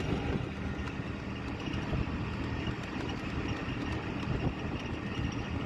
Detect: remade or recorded recorded